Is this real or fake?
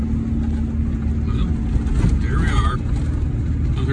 real